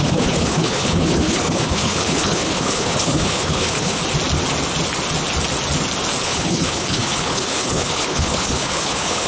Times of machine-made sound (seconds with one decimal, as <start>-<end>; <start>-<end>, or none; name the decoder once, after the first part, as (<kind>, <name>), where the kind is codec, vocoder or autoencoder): 0.0-4.0 (codec, HILCodec); 6.2-9.3